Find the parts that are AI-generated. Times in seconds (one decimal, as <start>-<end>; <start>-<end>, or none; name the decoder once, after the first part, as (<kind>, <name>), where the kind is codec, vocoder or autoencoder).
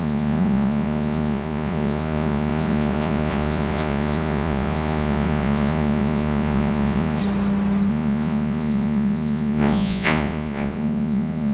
0.0-7.2 (vocoder, Vocos); 7.9-11.5